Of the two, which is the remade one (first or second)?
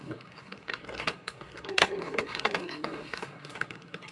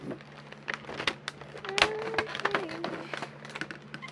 first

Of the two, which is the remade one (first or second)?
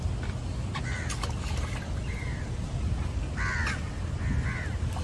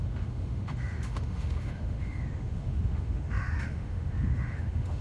second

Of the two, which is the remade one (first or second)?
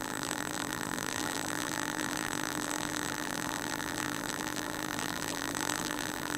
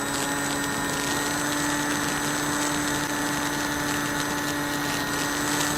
first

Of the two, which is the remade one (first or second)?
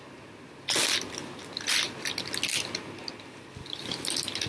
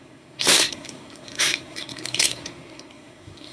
second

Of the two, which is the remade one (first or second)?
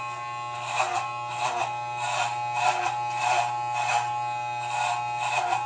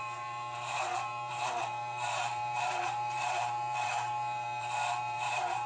second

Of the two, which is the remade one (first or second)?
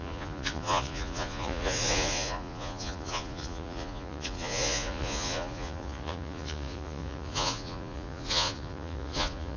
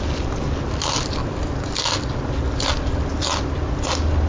first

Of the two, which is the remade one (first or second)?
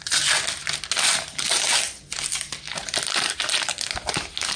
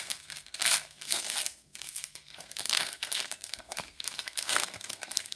second